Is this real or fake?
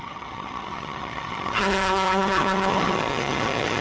fake